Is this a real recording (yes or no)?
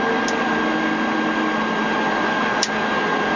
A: yes